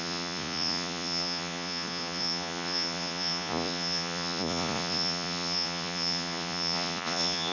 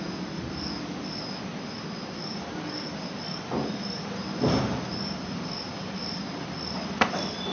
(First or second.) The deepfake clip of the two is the first